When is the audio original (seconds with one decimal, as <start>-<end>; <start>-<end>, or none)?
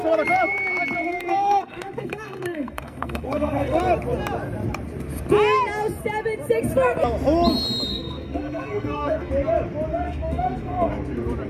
0.0-1.0; 3.8-7.9; 9.3-9.9; 10.9-11.5